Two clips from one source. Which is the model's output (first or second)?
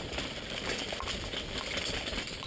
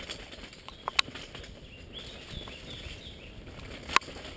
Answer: first